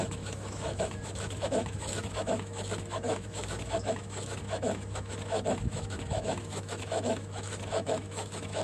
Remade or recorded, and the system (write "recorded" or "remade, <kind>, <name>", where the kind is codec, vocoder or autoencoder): remade, autoencoder, DAC-VAE